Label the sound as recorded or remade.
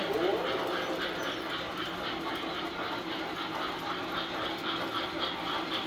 recorded